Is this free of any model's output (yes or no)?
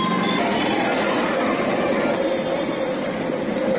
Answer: yes